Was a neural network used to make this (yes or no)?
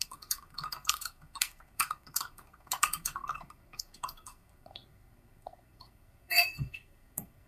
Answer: yes